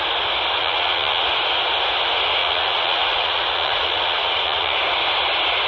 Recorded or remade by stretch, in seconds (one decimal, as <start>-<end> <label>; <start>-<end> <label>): 0.0-0.6 recorded; 0.6-1.2 remade; 1.2-2.4 recorded; 2.4-4.8 remade; 4.8-5.7 recorded